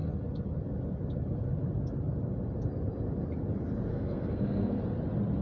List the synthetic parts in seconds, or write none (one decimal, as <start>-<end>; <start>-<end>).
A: 3.9-4.8

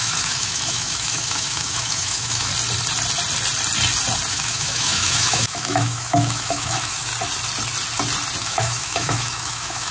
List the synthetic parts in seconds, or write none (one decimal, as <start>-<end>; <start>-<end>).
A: 0.0-2.5; 4.3-7.1; 8.4-9.9

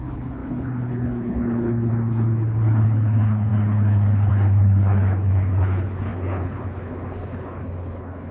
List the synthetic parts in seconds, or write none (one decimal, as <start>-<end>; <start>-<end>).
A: 0.0-8.3

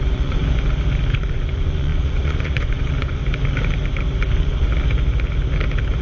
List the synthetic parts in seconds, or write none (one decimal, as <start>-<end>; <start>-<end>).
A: 0.0-0.4; 1.3-3.2; 4.3-4.7